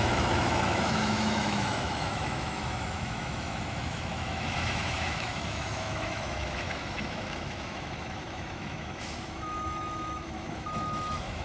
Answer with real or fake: fake